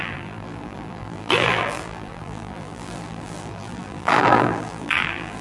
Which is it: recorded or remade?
remade